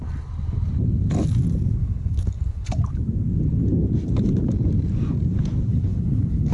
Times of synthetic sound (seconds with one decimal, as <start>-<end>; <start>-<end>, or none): 1.8-2.8; 5.7-6.5